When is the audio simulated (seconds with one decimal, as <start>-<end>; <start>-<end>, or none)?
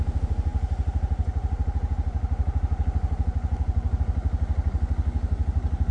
none